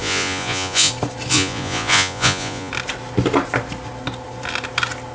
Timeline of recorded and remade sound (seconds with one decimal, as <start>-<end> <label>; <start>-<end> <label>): 0.0-0.9 remade; 0.9-1.3 recorded; 1.3-2.7 remade; 2.7-5.1 recorded